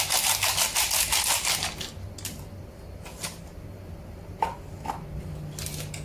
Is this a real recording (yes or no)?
yes